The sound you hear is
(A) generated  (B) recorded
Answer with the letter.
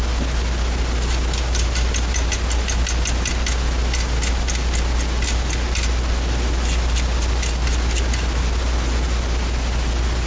B